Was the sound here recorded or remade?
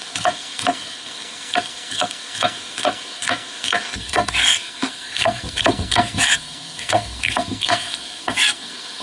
remade